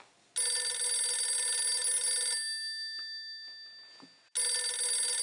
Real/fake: real